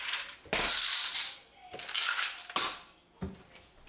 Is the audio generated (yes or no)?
no